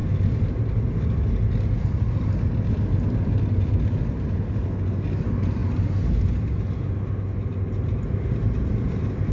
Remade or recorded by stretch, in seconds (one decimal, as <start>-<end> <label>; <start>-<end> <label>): 0.0-9.3 recorded